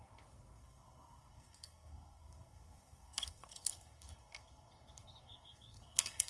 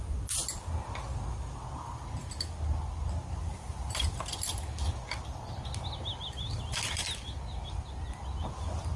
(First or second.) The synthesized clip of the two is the first